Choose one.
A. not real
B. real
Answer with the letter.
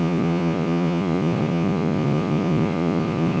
A